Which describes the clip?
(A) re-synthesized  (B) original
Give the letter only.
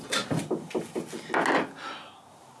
B